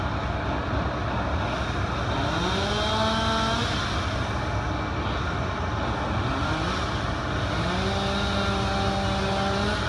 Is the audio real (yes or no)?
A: yes